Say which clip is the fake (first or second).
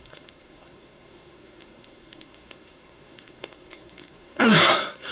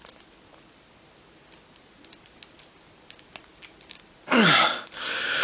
first